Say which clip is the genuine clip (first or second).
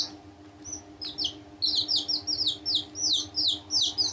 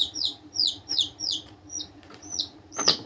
first